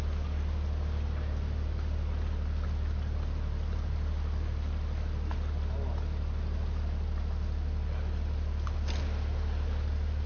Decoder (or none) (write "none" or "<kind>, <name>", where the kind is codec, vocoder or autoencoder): none